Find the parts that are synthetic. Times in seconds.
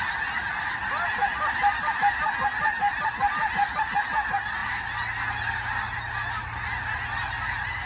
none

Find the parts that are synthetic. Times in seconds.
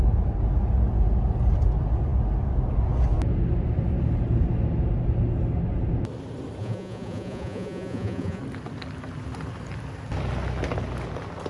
6.6-8.4 (vocoder, Vocos)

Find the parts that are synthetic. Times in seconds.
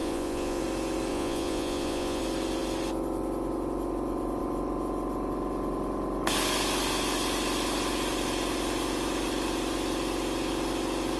0.0-0.6 (vocoder, Vocos); 1.1-2.2